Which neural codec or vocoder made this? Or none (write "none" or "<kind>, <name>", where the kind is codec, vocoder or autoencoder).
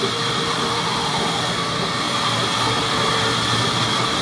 none